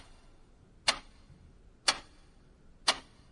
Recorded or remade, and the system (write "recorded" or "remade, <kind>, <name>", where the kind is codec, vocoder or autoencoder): recorded